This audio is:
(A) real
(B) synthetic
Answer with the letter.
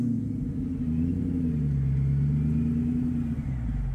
A